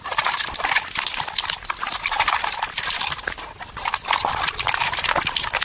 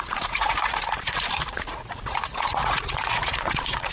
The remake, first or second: second